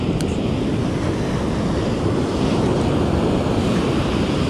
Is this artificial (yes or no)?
no